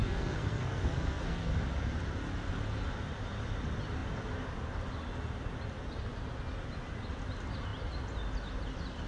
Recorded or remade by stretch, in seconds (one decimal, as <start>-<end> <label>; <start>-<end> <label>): 0.0-1.5 remade; 1.5-9.1 recorded